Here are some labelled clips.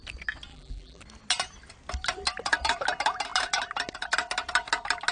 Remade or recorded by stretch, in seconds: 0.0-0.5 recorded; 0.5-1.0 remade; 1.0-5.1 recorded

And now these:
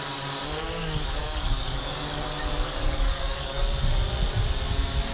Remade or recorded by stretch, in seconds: 0.0-1.2 recorded; 1.2-3.6 remade; 3.6-5.1 recorded